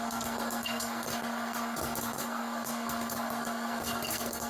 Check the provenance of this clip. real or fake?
fake